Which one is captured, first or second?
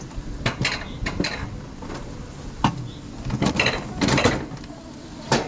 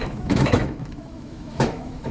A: first